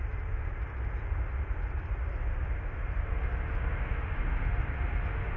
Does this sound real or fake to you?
real